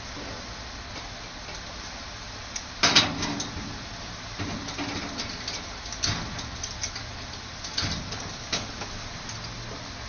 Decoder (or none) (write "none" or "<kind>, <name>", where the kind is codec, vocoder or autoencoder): none